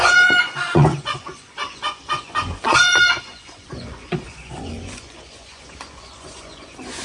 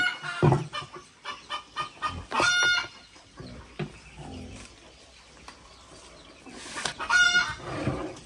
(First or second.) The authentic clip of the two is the second